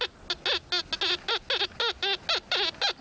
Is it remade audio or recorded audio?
recorded